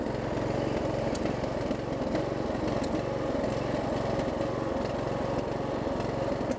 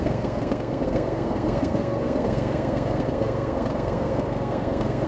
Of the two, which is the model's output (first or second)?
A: second